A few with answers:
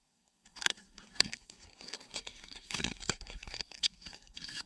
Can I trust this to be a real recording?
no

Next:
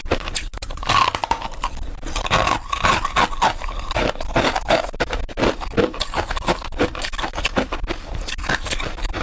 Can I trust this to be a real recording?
yes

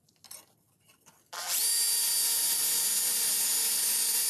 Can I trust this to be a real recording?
yes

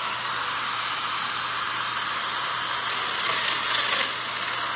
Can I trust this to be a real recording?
yes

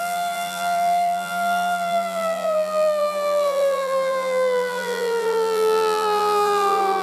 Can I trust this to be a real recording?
no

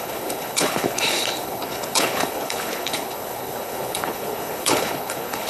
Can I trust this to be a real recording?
no